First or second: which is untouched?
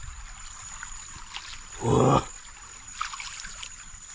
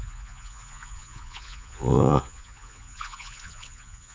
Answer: first